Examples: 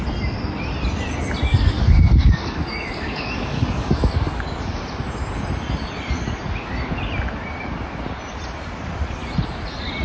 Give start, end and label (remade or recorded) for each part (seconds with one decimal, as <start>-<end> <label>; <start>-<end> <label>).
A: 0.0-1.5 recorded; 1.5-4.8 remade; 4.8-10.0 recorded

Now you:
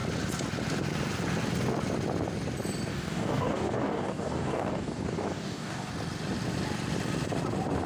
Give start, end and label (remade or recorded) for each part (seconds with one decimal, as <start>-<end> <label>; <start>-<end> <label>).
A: 0.0-2.9 recorded; 2.9-5.9 remade; 5.9-7.9 recorded

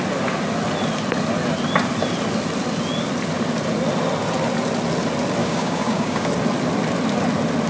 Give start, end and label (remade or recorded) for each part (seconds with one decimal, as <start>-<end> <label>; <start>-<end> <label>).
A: 0.0-5.4 recorded; 5.4-6.3 remade; 6.3-7.7 recorded

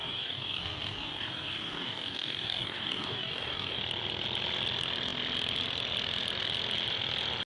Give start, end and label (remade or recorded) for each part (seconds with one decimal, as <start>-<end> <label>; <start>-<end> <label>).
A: 0.0-3.8 remade; 3.8-7.5 recorded

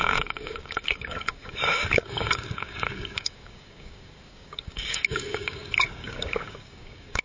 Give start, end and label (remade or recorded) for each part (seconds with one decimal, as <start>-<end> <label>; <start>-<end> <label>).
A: 0.0-7.2 remade

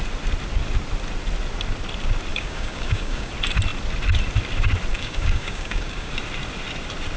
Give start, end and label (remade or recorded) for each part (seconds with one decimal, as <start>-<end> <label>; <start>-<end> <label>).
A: 0.0-2.3 recorded; 2.3-3.3 remade; 3.3-4.9 recorded; 4.9-6.1 remade; 6.1-7.2 recorded

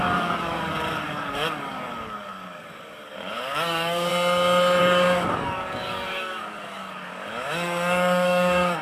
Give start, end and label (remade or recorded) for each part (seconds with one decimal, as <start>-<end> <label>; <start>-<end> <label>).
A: 0.0-4.1 remade; 4.1-4.8 recorded; 4.8-8.8 remade

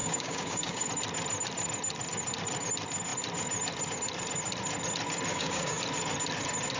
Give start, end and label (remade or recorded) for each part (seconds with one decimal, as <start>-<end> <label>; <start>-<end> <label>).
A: 0.0-0.9 remade; 0.9-5.3 recorded; 5.3-5.8 remade; 5.8-6.8 recorded